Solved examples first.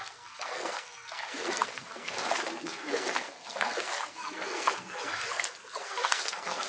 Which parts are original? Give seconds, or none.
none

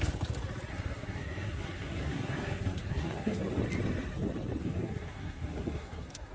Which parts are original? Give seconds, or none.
0.0-0.7; 3.4-4.6

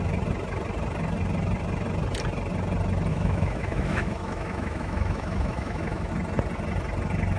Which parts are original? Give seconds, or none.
0.0-3.1; 6.1-7.4

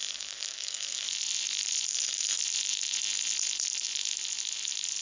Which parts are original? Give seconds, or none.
1.1-1.9; 2.4-5.0

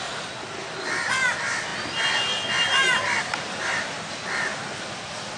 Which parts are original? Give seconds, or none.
0.0-5.4

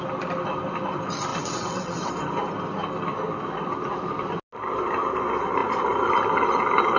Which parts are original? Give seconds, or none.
0.0-1.3; 2.1-7.0

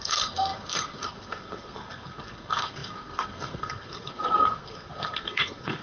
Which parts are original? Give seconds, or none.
none

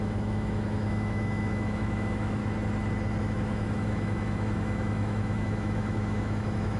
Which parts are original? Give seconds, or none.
2.4-3.2